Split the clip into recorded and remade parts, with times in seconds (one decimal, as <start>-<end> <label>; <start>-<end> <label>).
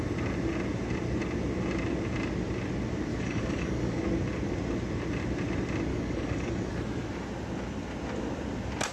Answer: 0.0-3.1 recorded; 3.1-4.0 remade; 4.0-5.9 recorded; 5.9-6.7 remade; 6.7-8.9 recorded